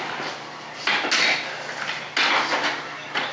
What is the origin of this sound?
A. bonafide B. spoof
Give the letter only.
A